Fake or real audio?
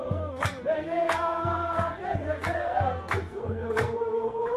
fake